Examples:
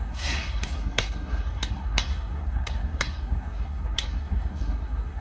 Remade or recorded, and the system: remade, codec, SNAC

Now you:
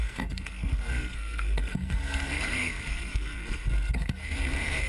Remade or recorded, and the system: remade, codec, SNAC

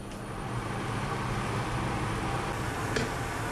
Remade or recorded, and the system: recorded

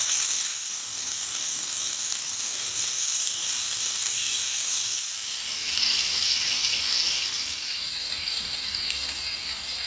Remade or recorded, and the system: remade, codec, DAC